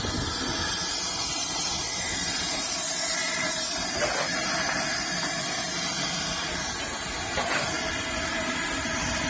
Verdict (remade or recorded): recorded